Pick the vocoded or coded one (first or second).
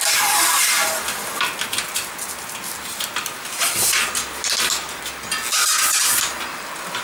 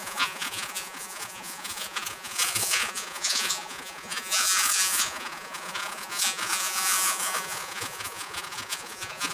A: second